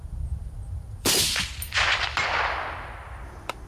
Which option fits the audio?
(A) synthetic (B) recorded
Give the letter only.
A